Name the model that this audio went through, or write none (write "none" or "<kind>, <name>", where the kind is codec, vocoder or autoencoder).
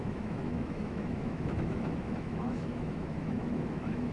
autoencoder, DAC-VAE